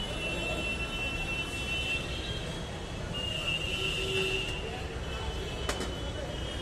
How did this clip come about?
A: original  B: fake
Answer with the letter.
A